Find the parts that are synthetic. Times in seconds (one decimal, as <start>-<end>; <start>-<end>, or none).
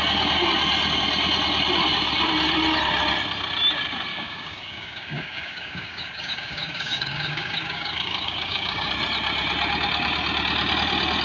4.1-8.9